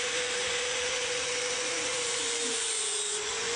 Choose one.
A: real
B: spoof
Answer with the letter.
B